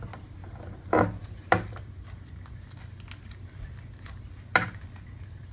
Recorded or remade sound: recorded